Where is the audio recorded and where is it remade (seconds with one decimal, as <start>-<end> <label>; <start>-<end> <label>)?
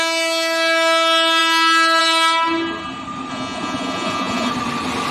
0.0-3.3 recorded; 3.3-4.5 remade; 4.5-5.1 recorded